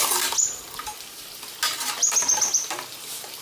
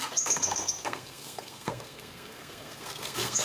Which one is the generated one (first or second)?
second